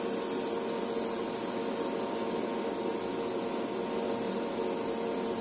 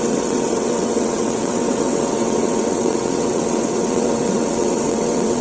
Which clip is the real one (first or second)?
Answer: first